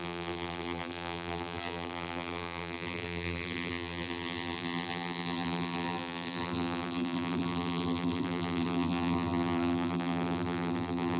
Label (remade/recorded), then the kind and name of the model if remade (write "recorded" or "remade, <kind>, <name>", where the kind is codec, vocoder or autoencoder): remade, vocoder, BigVGAN v2